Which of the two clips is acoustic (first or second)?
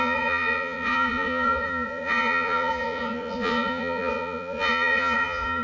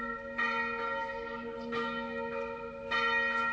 second